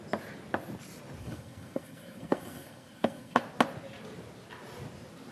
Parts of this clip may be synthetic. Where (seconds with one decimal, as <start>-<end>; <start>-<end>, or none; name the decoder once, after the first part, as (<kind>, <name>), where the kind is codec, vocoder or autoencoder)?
1.2-3.4 (codec, SNAC)